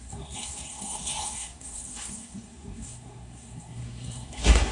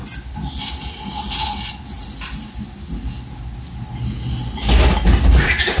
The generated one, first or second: first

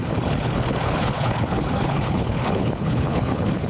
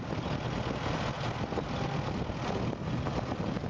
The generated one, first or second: first